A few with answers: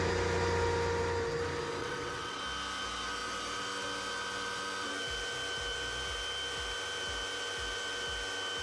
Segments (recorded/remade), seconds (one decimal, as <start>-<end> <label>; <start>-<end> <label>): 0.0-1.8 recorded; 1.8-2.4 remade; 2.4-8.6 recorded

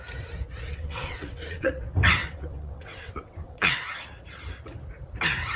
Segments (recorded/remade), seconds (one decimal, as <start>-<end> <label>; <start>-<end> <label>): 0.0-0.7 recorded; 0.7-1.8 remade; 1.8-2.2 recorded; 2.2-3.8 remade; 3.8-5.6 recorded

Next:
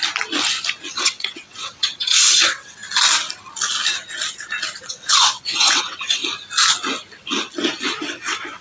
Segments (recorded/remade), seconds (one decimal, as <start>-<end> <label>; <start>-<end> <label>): 0.0-0.9 recorded; 0.9-2.8 remade; 2.8-4.8 recorded; 4.8-6.2 remade; 6.2-8.0 recorded; 8.0-8.6 remade

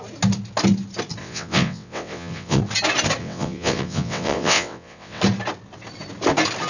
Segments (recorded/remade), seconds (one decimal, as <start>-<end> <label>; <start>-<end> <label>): 0.0-1.2 recorded; 1.2-2.6 remade; 2.6-3.2 recorded; 3.2-5.2 remade; 5.2-6.7 recorded

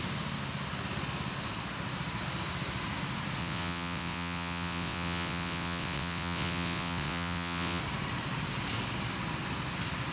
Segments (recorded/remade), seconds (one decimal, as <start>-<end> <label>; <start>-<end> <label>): 0.0-3.4 recorded; 3.4-7.8 remade; 7.8-10.1 recorded

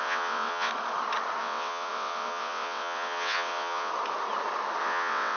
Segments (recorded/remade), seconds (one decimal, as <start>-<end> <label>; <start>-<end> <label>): 0.0-0.7 remade; 0.7-1.4 recorded; 1.4-3.9 remade; 3.9-4.8 recorded; 4.8-5.4 remade

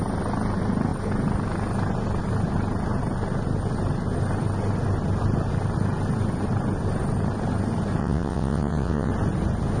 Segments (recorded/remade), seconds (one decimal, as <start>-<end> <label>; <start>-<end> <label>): 0.0-8.0 recorded; 8.0-9.1 remade; 9.1-9.8 recorded